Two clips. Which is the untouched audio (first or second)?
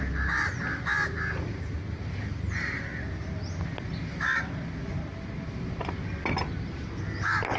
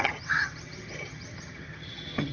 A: first